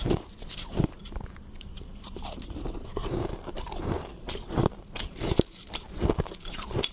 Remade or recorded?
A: remade